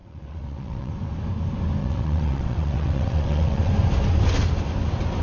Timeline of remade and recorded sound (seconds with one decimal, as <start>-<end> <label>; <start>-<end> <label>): 0.0-0.9 remade; 0.9-1.8 recorded; 1.8-3.7 remade; 3.7-5.2 recorded